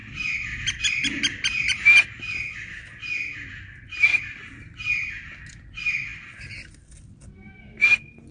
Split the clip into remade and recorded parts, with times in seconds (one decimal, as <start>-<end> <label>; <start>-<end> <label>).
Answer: 0.0-8.3 recorded